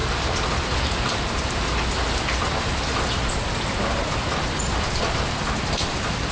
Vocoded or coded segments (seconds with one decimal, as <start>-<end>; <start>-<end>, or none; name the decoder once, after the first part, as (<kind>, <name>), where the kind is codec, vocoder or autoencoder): none